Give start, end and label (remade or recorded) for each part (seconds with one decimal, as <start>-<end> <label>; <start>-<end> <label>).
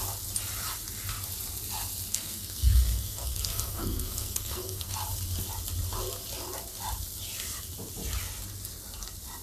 0.0-2.1 recorded; 2.1-5.0 remade; 5.0-9.4 recorded